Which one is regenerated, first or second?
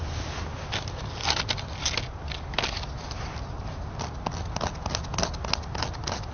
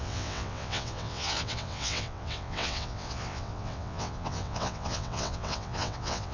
second